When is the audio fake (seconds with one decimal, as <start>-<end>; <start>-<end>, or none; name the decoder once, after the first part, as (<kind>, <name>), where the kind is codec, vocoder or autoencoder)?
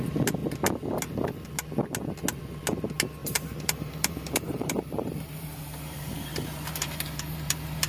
3.2-7.9 (vocoder, BigVGAN v2)